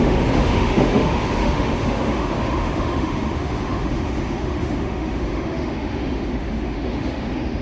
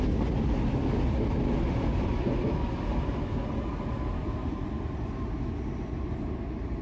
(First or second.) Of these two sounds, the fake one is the first